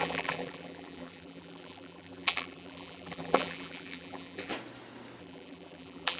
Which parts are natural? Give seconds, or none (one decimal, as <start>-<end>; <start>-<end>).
4.5-5.2